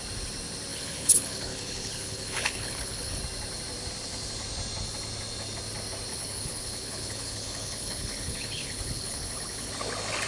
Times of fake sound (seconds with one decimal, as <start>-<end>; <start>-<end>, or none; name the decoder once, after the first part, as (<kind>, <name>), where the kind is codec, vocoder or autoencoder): 0.7-3.2 (codec, HILCodec); 6.1-9.7